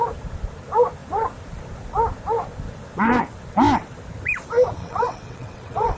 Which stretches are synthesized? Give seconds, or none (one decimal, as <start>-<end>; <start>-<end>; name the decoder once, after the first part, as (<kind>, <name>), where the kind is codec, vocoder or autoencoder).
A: 4.8-6.0 (vocoder, WaveNeXt)

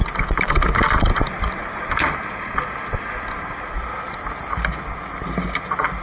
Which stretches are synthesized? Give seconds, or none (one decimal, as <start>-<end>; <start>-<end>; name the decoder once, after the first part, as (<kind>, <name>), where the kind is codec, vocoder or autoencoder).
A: none

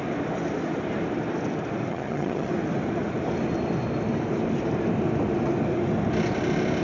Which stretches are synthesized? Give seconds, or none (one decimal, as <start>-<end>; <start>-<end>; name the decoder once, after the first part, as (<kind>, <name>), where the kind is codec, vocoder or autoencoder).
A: 1.9-2.5 (vocoder, HiFi-GAN)